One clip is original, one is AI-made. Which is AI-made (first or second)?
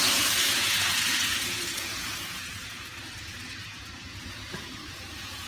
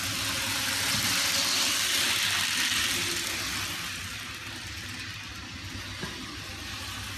first